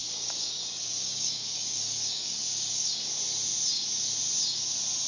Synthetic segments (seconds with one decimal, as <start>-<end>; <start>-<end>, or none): 0.0-2.9